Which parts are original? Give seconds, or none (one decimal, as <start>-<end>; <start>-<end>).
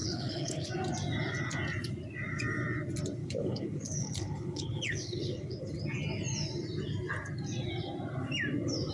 0.7-3.2; 5.7-8.9